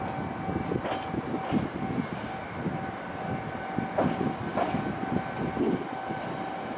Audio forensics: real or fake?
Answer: real